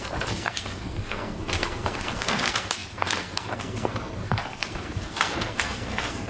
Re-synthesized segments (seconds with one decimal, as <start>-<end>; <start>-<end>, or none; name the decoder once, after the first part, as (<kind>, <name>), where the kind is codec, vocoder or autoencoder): 0.0-6.3 (codec, SNAC)